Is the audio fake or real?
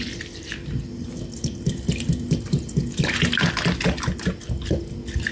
real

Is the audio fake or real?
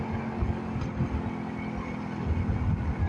real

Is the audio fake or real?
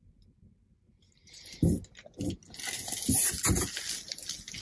real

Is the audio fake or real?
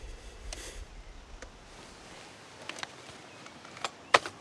real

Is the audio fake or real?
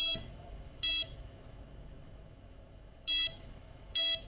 fake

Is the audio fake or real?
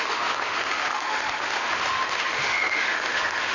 fake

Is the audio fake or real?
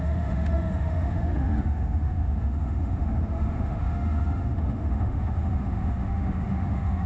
fake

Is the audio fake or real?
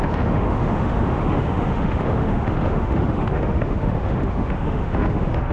fake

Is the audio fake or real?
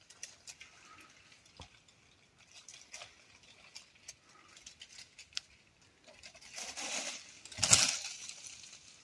real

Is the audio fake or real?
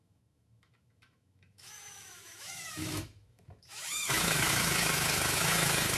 fake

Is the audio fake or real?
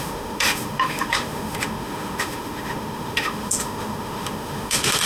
fake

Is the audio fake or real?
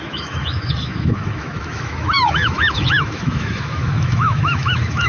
fake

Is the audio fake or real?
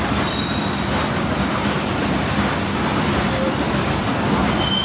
real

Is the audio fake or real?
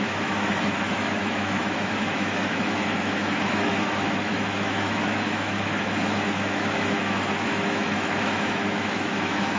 fake